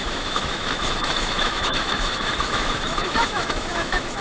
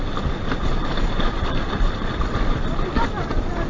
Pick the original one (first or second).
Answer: second